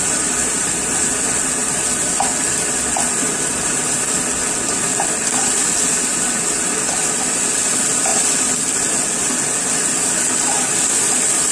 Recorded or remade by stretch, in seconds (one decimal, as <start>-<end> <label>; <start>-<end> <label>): 0.0-11.5 recorded